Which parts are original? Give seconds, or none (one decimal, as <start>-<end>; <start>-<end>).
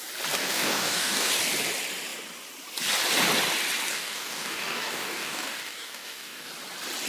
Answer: 0.0-0.4; 1.3-3.9; 6.5-7.1